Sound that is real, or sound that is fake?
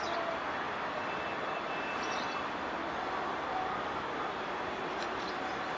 real